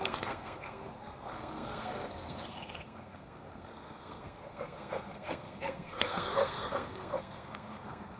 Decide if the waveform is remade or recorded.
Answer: remade